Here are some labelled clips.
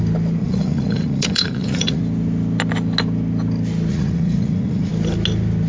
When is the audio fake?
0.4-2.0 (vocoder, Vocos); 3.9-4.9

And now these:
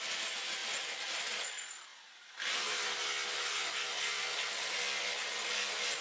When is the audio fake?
none

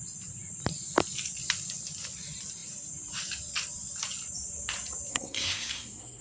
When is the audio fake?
5.1-6.2 (codec, SNAC)

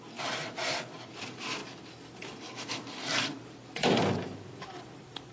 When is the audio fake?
0.0-5.3 (vocoder, BigVGAN v2)